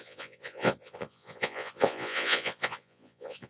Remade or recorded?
remade